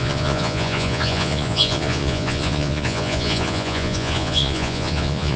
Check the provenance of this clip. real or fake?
fake